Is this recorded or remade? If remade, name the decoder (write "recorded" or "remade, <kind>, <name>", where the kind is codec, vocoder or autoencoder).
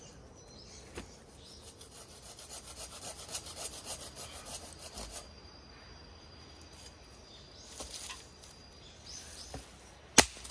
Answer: recorded